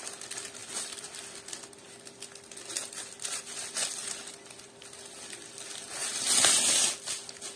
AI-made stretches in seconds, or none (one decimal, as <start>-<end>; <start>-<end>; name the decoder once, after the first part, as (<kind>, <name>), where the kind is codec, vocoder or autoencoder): 0.6-1.2 (vocoder, BigVGAN v2); 6.0-6.8